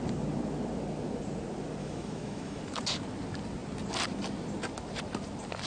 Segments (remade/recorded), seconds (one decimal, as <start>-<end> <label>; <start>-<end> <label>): 0.0-1.8 recorded; 1.8-2.6 remade; 2.6-5.7 recorded